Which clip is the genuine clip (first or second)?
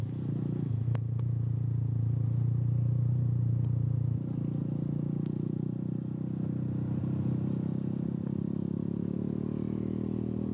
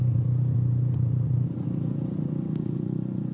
first